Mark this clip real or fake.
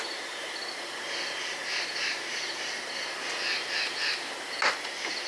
real